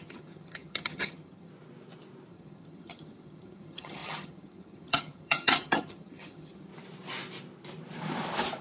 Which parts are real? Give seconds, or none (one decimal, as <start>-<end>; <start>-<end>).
1.5-2.3; 6.7-8.6